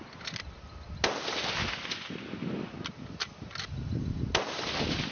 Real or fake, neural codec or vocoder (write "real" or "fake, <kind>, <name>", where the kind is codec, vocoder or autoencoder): real